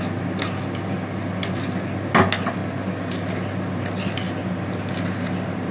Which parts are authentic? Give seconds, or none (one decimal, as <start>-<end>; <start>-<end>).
0.0-5.7